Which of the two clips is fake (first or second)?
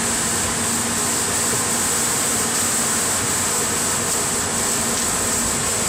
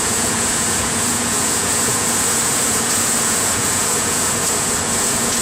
second